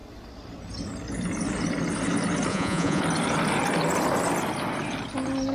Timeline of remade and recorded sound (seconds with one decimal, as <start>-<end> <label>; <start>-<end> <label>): 0.0-2.5 recorded; 2.5-3.0 remade; 3.0-5.5 recorded